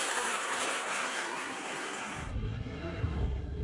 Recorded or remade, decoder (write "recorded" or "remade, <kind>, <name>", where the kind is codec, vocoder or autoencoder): remade, codec, SNAC